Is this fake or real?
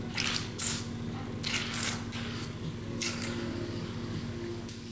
fake